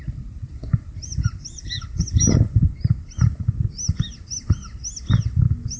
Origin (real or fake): real